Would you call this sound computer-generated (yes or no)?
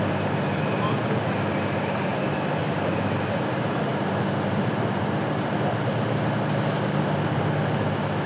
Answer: no